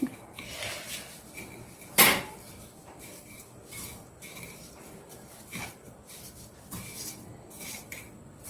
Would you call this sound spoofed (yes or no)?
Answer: yes